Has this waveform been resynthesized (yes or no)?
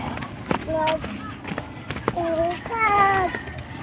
no